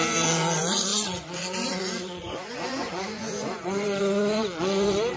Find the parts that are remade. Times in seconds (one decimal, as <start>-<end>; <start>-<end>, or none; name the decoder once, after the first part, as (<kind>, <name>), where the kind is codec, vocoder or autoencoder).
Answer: 0.0-5.2 (vocoder, Vocos)

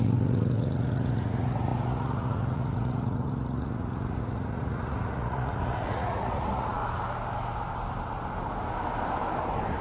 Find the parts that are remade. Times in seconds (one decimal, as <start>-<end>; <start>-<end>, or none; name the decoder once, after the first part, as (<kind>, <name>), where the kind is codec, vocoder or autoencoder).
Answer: 0.0-6.8 (vocoder, Vocos)

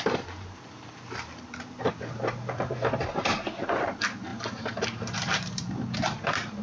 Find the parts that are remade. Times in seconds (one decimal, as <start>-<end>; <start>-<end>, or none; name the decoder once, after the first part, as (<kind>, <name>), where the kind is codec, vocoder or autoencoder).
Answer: 0.0-6.6 (vocoder, BigVGAN v2)

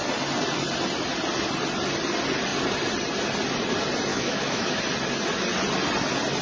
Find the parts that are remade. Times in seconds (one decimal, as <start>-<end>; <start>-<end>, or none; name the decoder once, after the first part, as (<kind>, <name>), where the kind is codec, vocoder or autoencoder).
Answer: 4.1-4.8 (autoencoder, DAC-VAE)